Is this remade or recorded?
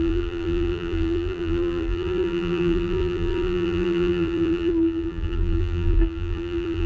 remade